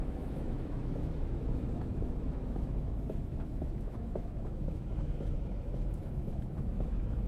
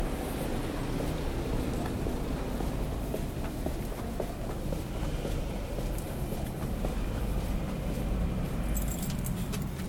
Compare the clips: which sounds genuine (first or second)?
second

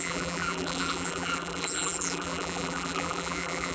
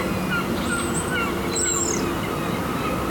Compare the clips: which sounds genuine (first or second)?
second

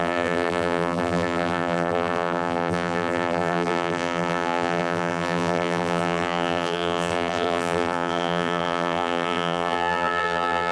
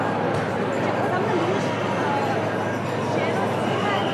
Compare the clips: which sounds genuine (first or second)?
second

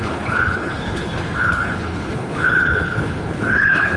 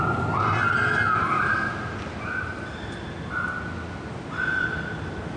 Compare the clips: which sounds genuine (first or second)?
second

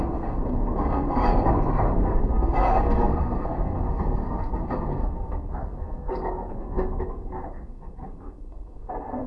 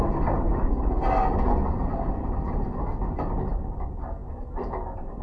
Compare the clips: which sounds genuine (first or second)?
second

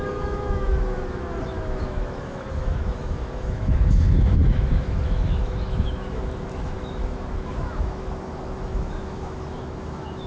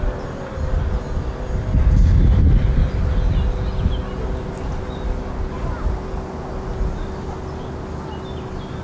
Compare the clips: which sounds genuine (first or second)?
second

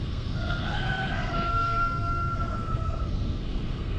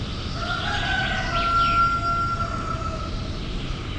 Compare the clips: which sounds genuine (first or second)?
second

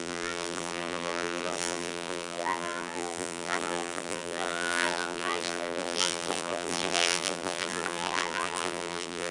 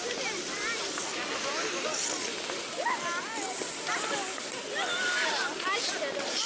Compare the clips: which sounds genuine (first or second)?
second